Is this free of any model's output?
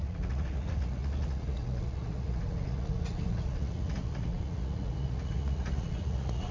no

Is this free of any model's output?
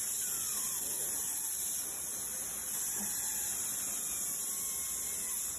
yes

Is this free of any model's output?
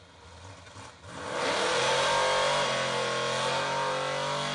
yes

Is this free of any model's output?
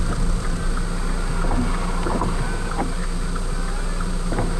yes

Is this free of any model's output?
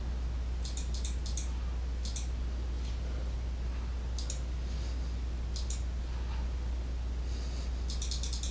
yes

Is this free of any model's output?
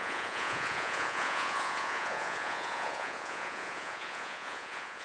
no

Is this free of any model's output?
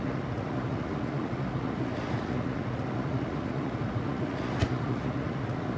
no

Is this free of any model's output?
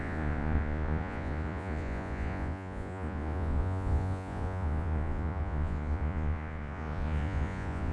no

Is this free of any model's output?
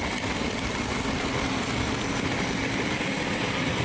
yes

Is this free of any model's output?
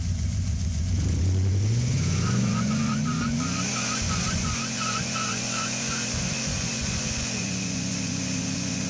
no